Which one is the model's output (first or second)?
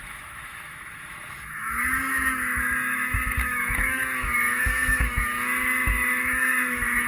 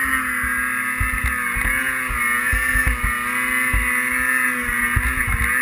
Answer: first